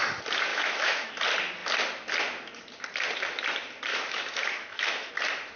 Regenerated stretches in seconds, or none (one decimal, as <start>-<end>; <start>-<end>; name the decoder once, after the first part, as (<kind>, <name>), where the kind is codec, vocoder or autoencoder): 0.5-1.1 (autoencoder, DAC-VAE); 3.9-5.1